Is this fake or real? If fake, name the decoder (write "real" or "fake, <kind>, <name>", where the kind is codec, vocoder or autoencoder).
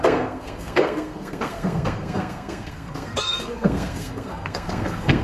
fake, codec, SNAC